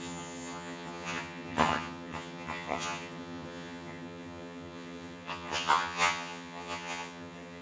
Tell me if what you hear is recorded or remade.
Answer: remade